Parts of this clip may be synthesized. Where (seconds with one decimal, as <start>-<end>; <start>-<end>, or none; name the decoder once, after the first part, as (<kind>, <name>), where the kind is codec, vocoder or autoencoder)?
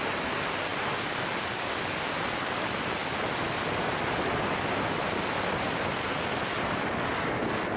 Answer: none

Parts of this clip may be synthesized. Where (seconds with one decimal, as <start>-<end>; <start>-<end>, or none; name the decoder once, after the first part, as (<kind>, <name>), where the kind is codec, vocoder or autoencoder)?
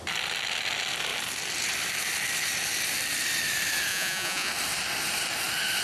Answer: 3.9-4.5 (vocoder, Vocos)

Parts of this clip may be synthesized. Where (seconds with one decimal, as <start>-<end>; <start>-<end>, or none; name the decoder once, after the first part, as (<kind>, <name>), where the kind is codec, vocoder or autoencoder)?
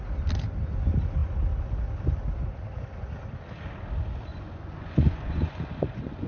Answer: 4.3-6.3 (vocoder, Vocos)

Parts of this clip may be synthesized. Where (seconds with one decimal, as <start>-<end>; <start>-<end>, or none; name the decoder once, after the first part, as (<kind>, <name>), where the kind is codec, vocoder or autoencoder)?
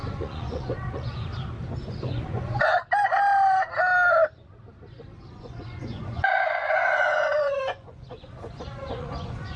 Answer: 0.0-1.3 (vocoder, Vocos); 1.9-2.8; 5.3-9.6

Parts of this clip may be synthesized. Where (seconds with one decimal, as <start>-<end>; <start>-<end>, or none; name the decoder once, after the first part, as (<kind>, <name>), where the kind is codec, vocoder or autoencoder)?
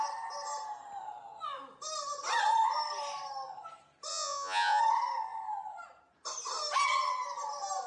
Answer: 4.1-4.8 (vocoder, Vocos)